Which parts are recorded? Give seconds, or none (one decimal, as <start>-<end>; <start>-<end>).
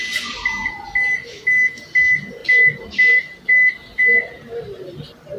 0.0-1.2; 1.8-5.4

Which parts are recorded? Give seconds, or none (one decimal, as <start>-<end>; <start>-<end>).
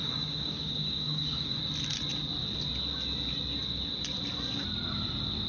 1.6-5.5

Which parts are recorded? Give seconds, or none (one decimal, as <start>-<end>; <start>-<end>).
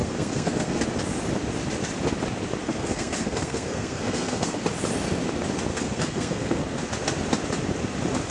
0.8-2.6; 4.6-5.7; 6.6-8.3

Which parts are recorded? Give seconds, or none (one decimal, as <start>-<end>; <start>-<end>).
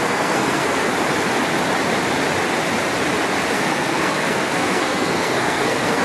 0.9-3.5